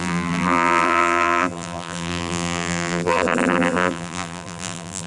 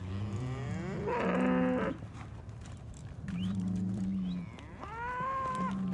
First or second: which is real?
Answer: second